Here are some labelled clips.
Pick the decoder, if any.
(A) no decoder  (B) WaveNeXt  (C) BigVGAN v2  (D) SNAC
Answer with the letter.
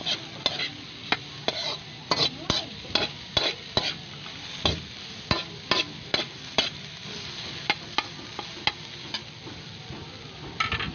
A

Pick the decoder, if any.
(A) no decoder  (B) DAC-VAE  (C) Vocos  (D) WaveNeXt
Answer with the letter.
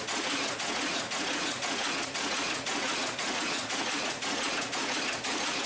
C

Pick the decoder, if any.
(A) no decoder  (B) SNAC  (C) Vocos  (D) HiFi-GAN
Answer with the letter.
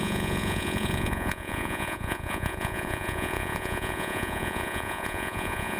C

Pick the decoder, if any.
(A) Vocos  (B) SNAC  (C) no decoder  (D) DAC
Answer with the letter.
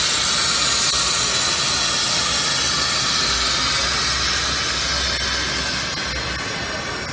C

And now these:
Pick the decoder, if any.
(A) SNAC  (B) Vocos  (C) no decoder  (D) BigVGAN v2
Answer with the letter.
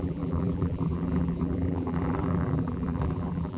D